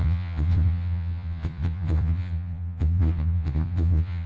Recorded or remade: remade